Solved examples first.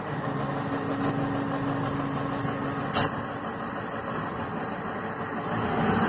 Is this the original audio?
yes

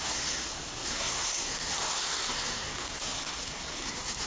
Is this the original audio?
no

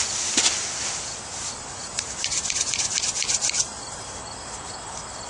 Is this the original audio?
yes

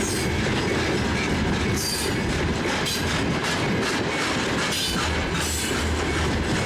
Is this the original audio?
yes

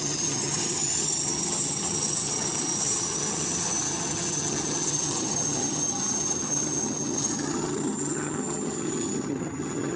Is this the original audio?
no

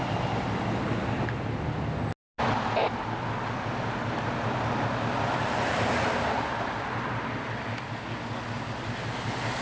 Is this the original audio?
yes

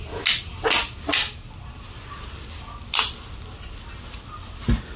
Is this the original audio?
yes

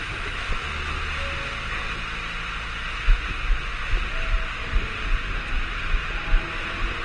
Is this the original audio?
yes